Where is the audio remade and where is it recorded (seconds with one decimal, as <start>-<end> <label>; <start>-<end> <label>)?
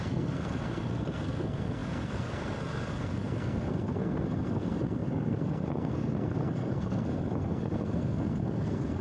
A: 0.0-9.0 remade